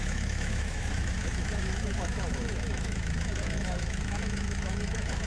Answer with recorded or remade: remade